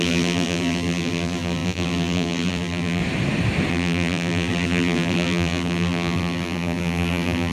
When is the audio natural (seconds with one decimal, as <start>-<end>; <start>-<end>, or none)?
3.0-3.7